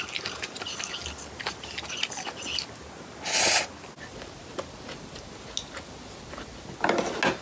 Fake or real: real